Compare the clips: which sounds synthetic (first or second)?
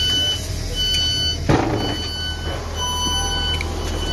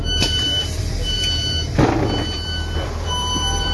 second